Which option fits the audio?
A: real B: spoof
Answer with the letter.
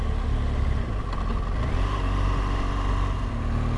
A